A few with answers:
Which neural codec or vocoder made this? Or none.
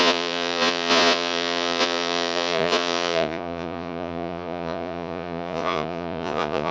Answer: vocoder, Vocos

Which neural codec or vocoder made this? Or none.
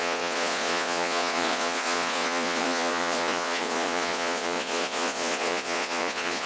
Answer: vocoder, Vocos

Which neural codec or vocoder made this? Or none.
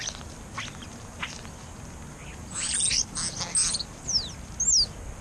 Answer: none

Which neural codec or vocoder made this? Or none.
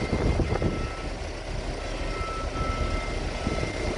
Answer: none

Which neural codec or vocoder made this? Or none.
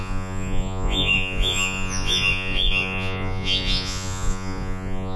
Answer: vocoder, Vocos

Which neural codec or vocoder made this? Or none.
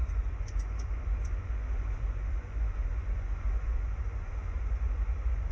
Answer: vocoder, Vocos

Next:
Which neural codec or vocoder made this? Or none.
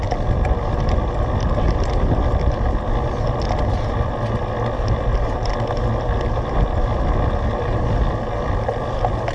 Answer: none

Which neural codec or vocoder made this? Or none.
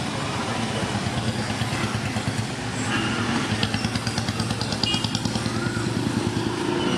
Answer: none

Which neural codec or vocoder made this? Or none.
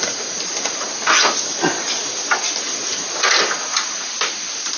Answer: none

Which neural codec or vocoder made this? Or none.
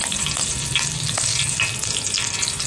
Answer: none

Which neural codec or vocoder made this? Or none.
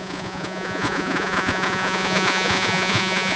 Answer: vocoder, Vocos